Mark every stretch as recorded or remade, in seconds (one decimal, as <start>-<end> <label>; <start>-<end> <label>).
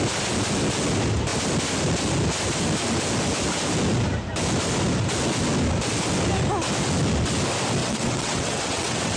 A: 0.0-7.8 recorded; 7.8-9.2 remade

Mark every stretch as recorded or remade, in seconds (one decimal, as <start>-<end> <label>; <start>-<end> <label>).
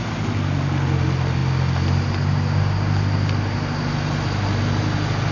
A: 0.0-5.3 recorded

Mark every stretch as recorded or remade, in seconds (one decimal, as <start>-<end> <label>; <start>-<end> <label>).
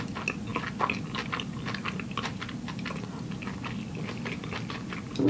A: 0.0-5.3 recorded